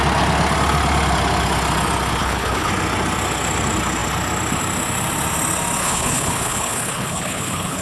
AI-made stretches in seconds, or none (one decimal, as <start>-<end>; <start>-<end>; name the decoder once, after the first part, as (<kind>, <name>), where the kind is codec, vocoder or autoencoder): 2.2-2.7 (codec, HILCodec); 5.8-7.8